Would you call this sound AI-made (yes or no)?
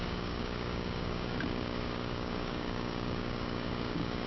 yes